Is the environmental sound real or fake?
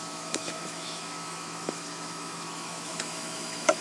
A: fake